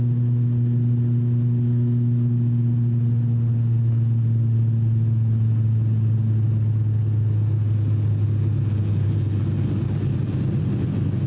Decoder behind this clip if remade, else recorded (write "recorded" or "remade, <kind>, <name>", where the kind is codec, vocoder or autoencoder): recorded